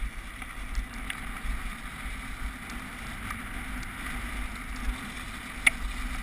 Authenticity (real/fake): real